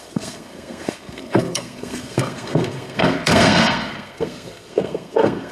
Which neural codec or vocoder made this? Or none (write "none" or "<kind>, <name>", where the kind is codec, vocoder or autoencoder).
codec, SNAC